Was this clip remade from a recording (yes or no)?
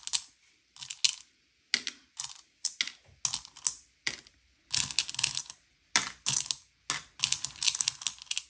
no